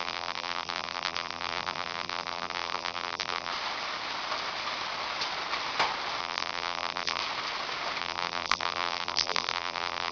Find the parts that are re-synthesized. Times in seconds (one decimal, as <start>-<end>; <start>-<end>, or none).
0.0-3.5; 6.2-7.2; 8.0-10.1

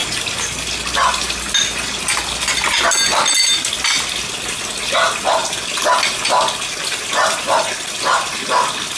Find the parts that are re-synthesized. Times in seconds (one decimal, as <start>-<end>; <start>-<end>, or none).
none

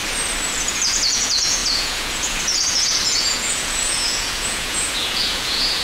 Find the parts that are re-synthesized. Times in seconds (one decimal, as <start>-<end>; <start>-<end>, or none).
0.6-5.8